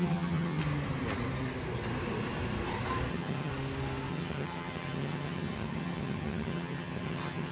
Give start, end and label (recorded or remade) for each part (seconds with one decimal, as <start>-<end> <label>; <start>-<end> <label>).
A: 0.0-0.6 remade; 0.6-3.1 recorded; 3.1-3.5 remade; 3.5-4.1 recorded; 4.1-7.5 remade

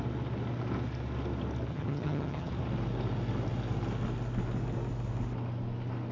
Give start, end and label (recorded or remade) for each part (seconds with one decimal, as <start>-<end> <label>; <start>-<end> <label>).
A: 0.0-1.7 recorded; 1.7-2.5 remade; 2.5-6.1 recorded

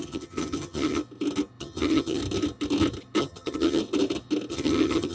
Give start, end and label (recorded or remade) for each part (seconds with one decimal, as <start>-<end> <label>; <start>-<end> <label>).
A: 0.0-1.0 remade; 1.0-1.6 recorded; 1.6-2.2 remade; 2.2-3.2 recorded; 3.2-3.8 remade; 3.8-4.5 recorded; 4.5-5.1 remade

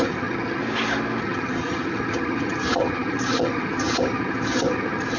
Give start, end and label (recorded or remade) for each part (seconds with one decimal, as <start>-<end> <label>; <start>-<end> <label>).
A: 0.0-0.6 remade; 0.6-1.2 recorded; 1.2-5.2 remade

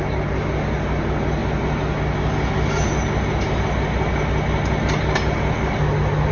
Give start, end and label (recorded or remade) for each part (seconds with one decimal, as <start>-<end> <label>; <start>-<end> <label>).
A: 0.0-6.3 recorded